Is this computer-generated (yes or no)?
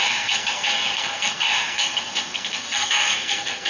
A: yes